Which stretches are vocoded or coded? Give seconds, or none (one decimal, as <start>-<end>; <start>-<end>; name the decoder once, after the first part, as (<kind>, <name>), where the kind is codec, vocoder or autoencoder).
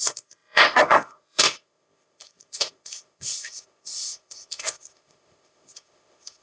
0.0-6.4 (codec, ZipCodec)